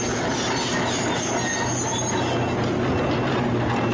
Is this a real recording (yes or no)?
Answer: yes